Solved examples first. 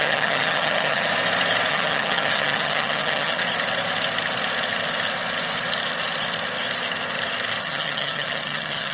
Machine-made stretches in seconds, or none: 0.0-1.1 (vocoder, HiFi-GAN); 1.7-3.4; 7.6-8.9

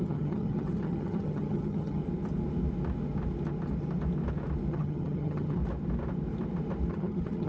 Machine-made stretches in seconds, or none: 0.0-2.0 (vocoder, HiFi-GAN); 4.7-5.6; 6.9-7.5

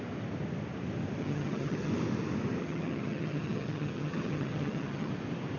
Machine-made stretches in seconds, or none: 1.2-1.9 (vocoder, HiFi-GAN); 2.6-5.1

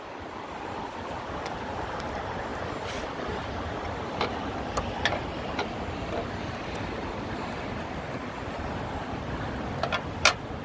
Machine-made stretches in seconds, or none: none

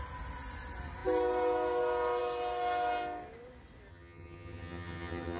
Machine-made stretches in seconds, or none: 3.9-5.4 (vocoder, HiFi-GAN)

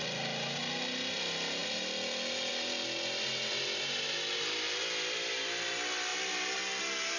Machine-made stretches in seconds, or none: none